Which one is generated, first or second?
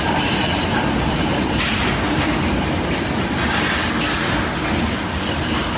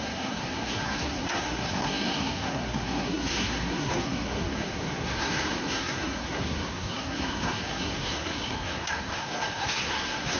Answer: second